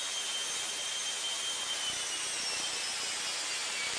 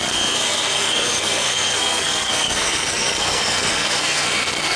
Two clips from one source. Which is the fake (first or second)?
second